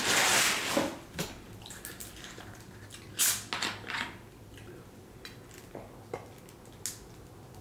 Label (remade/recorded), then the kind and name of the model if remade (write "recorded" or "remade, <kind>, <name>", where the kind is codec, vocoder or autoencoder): recorded